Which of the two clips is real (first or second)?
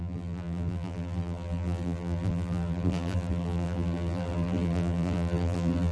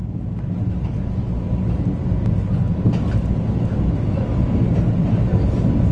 second